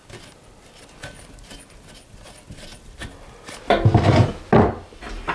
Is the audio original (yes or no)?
yes